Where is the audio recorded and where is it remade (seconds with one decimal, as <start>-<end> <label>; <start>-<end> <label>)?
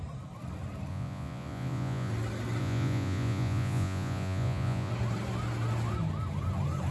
0.0-0.9 recorded; 0.9-2.1 remade; 2.1-2.6 recorded; 2.6-4.9 remade; 4.9-6.9 recorded